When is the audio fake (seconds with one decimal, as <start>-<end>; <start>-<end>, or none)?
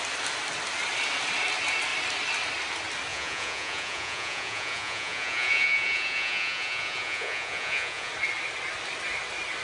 3.1-8.1